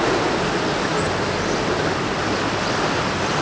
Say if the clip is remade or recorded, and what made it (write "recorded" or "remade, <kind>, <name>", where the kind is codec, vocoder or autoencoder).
recorded